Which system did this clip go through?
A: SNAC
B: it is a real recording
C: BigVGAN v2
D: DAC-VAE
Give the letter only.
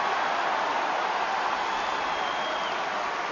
B